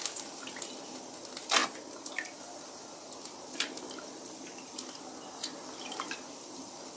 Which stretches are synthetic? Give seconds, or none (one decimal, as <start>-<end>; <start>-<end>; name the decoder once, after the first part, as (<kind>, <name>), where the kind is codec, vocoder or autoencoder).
1.6-2.4 (vocoder, BigVGAN v2)